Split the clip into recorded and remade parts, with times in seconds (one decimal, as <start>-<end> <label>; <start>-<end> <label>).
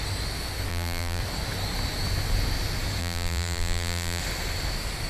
0.0-0.7 recorded; 0.7-1.2 remade; 1.2-3.0 recorded; 3.0-4.2 remade; 4.2-5.1 recorded